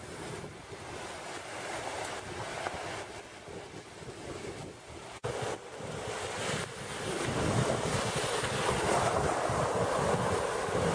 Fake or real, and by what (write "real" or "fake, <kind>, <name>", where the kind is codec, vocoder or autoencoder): real